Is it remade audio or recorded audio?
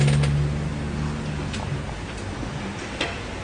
recorded